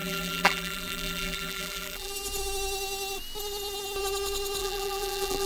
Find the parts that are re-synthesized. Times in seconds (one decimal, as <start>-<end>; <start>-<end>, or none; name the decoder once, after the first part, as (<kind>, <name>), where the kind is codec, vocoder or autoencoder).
0.0-2.1 (vocoder, BigVGAN v2); 4.6-5.5